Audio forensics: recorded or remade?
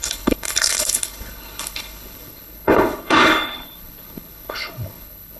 remade